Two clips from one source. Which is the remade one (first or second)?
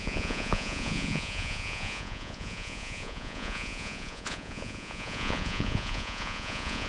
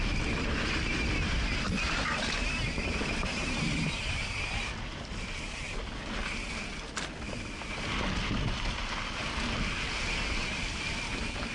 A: first